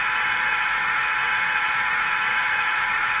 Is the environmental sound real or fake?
fake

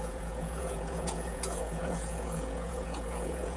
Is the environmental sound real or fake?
fake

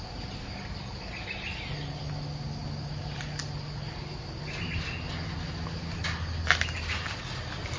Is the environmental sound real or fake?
real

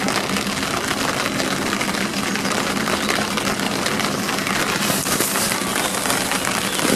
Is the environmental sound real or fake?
real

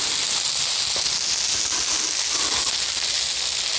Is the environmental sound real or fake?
real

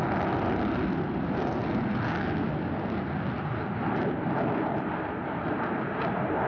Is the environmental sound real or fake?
real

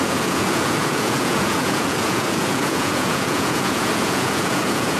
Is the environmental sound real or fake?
fake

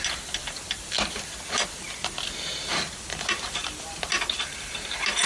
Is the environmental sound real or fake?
real